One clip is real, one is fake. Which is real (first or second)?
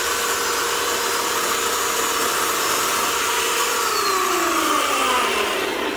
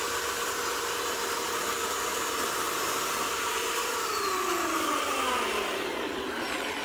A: first